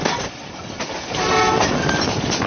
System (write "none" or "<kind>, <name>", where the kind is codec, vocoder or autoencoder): none